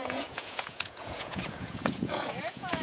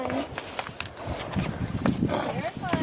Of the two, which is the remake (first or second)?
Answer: first